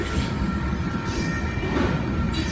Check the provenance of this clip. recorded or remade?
recorded